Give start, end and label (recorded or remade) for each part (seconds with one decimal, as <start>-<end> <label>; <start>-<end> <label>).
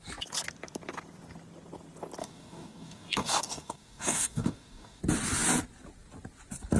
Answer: 0.0-2.2 recorded; 2.2-5.0 remade; 5.0-6.8 recorded